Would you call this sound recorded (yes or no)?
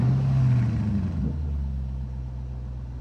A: yes